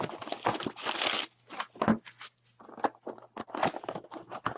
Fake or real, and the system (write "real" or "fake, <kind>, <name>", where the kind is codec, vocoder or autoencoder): real